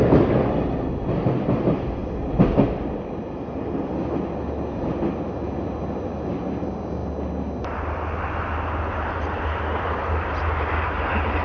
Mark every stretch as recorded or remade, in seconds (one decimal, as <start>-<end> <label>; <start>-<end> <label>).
0.0-11.4 recorded